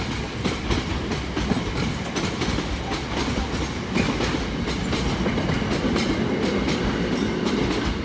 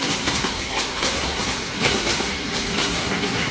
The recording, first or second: first